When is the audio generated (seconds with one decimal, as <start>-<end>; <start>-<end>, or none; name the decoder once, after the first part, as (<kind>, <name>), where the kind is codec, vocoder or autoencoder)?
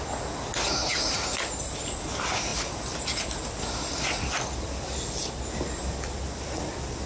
none